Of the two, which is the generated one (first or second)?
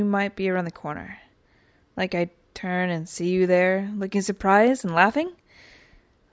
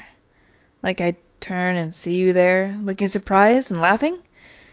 second